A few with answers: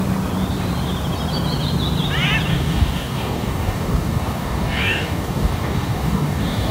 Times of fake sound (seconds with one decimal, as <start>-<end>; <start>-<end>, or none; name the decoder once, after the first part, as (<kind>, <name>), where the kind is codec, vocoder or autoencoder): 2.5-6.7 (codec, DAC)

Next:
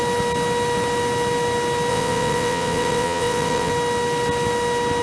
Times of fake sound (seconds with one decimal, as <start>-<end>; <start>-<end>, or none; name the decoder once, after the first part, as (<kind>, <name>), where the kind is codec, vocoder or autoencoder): 1.9-3.7 (vocoder, WaveNeXt)

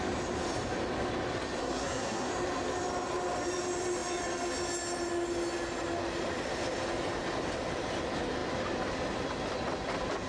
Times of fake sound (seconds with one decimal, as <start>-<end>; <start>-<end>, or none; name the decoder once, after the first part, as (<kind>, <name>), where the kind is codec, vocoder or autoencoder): 1.6-2.3 (codec, SNAC)